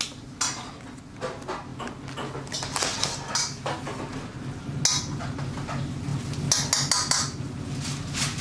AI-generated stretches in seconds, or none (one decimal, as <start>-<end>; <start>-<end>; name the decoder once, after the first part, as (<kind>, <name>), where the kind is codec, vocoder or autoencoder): none